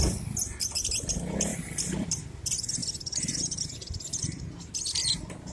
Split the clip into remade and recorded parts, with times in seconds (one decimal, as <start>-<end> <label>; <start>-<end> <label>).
0.0-1.5 recorded; 1.5-2.2 remade; 2.2-2.8 recorded; 2.8-4.4 remade; 4.4-5.5 recorded